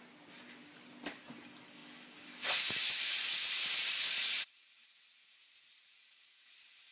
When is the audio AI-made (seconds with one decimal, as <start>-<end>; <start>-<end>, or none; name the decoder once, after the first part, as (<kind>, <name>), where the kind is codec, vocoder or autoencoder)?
none